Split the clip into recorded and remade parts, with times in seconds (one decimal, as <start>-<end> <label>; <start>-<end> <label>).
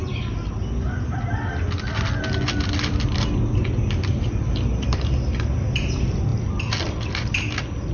0.0-7.9 recorded